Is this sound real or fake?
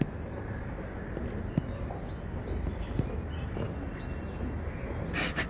real